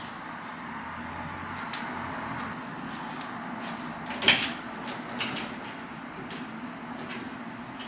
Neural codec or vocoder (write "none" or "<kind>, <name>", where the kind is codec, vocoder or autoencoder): none